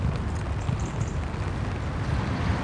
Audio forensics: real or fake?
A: real